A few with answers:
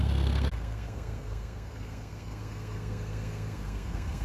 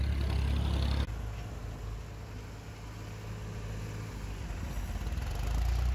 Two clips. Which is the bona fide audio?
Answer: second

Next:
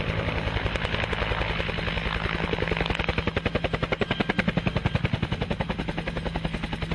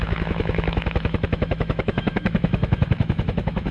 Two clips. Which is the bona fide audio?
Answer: first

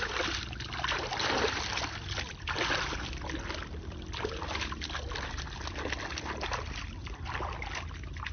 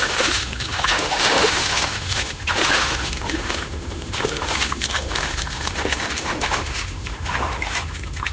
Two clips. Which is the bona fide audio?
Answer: first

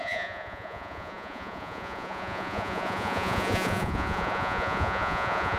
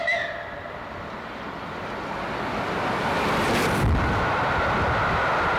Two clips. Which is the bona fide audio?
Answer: second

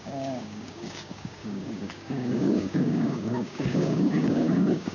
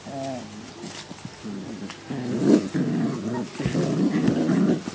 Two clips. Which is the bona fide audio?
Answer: second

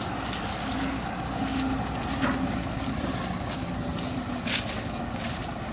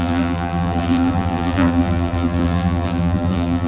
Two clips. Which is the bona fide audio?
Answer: first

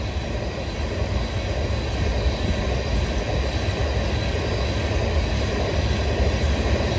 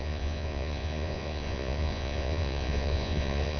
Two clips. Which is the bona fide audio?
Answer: first